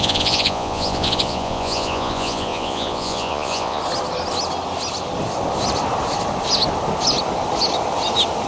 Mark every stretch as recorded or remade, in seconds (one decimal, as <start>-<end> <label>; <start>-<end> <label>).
0.0-3.8 remade; 3.8-8.5 recorded